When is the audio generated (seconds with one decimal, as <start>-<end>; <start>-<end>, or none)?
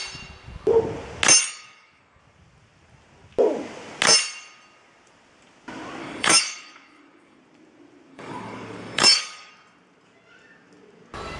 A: 1.4-2.2; 6.0-7.4; 8.1-9.5